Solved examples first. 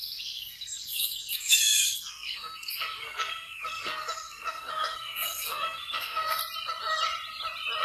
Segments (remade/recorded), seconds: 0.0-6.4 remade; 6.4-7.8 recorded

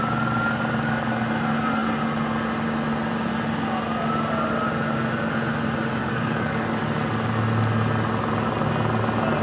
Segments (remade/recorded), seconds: 0.0-6.0 recorded; 6.0-6.8 remade; 6.8-9.4 recorded

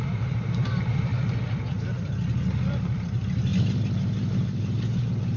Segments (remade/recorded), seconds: 0.0-1.1 remade; 1.1-2.7 recorded; 2.7-5.4 remade

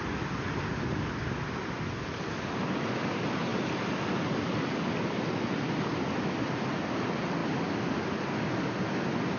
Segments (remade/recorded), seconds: 0.0-0.7 recorded; 0.7-1.9 remade; 1.9-3.5 recorded; 3.5-4.5 remade; 4.5-9.4 recorded

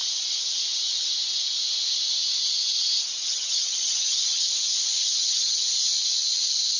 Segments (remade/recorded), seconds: 0.0-3.2 recorded; 3.2-4.4 remade; 4.4-5.0 recorded; 5.0-5.6 remade; 5.6-6.8 recorded